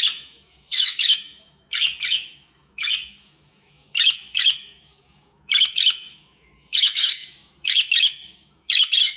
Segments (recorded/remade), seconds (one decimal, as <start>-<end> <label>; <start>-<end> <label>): 0.0-9.2 remade